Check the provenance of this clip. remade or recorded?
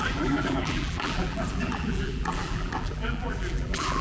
remade